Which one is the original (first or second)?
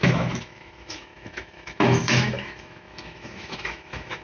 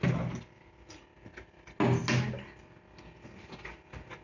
second